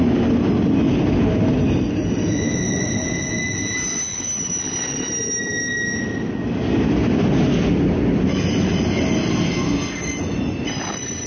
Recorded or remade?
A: recorded